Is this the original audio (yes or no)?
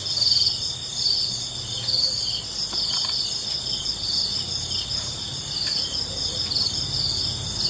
yes